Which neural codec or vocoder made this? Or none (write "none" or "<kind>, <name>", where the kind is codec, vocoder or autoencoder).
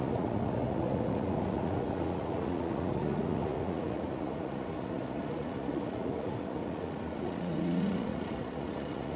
vocoder, Vocos